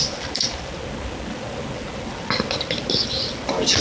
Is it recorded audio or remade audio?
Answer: recorded